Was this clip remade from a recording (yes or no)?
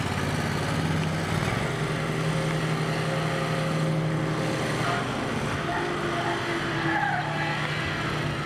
no